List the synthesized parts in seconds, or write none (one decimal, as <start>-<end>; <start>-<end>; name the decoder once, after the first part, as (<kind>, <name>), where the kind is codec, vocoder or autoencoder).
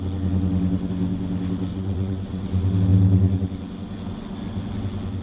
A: 1.7-2.5 (vocoder, WaveNeXt)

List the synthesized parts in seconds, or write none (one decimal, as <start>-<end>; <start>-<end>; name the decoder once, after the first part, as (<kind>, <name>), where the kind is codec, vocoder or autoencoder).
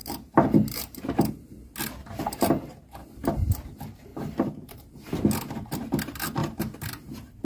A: 0.0-1.3 (vocoder, BigVGAN v2); 2.0-2.5; 4.1-4.8; 6.4-7.4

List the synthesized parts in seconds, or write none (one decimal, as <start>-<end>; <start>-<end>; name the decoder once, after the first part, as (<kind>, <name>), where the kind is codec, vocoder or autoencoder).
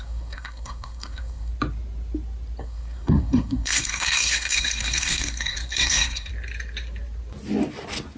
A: 0.0-1.5 (codec, SNAC); 2.6-6.3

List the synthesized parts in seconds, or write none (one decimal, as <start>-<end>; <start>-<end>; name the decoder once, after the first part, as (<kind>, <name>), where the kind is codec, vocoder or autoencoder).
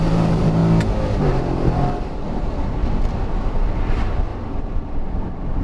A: 0.0-0.6 (vocoder, BigVGAN v2); 1.2-2.8; 3.5-4.3; 4.8-5.6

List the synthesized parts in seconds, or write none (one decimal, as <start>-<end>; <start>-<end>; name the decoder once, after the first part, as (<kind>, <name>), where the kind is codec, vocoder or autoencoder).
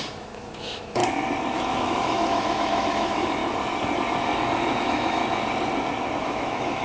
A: 0.0-1.0 (autoencoder, DAC-VAE); 1.6-3.4; 4.8-5.2; 6.2-6.8